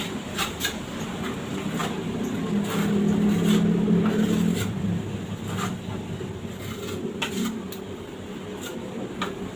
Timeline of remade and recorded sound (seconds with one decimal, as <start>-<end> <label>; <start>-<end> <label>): 0.0-9.6 recorded